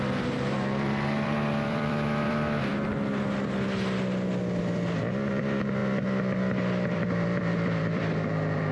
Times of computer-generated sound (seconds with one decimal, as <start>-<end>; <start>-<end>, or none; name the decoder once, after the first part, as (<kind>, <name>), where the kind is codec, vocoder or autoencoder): 0.0-2.7 (vocoder, BigVGAN v2); 4.6-5.8; 6.9-8.7